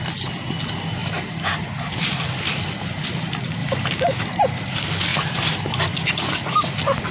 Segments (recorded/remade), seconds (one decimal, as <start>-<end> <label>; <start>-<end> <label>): 0.0-1.0 recorded; 1.0-1.7 remade; 1.7-3.6 recorded; 3.6-4.4 remade; 4.4-5.1 recorded; 5.1-5.7 remade; 5.7-7.1 recorded